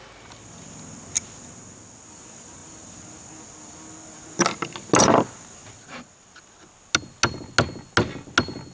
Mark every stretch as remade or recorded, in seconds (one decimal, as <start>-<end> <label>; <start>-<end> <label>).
0.0-8.7 recorded